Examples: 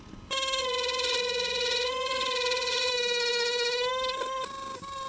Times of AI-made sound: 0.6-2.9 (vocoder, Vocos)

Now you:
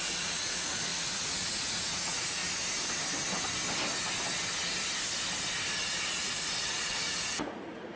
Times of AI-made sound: 0.0-2.4 (vocoder, Vocos); 6.0-8.0